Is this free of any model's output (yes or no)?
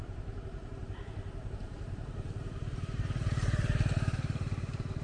no